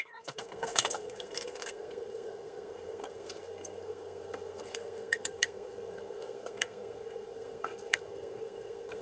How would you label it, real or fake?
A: fake